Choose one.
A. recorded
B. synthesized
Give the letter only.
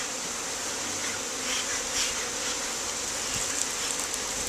A